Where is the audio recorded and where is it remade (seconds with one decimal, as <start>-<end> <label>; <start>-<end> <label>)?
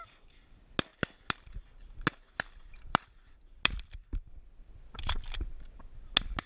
0.0-6.5 recorded